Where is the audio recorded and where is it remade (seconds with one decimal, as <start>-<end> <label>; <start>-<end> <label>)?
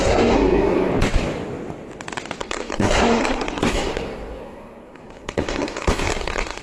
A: 0.0-0.9 remade; 0.9-2.4 recorded; 2.4-6.6 remade